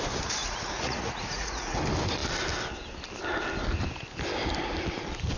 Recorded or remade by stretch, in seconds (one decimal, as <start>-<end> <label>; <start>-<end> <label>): 0.0-0.4 recorded; 0.4-1.8 remade; 1.8-5.4 recorded